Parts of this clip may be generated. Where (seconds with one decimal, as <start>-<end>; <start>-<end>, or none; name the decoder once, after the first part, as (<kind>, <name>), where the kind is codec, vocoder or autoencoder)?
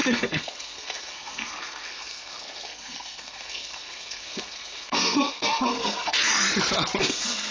0.0-6.3 (codec, SNAC); 7.0-7.5